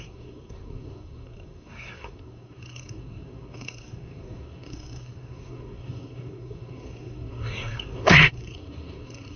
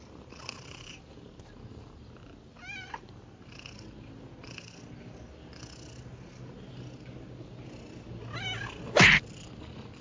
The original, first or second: second